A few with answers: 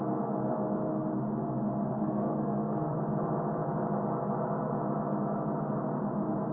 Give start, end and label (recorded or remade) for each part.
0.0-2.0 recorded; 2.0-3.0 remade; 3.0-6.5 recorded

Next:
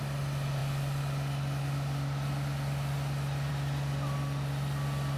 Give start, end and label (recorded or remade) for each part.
0.0-5.2 recorded

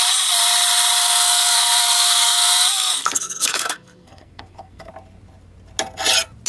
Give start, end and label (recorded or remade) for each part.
0.0-1.0 recorded; 1.0-4.9 remade; 4.9-6.5 recorded